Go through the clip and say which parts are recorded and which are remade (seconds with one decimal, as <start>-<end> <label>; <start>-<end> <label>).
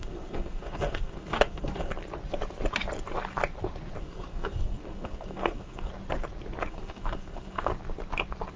0.0-1.9 remade; 1.9-4.0 recorded; 4.0-5.9 remade; 5.9-6.7 recorded; 6.7-7.7 remade; 7.7-8.6 recorded